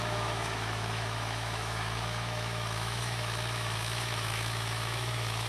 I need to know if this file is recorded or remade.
remade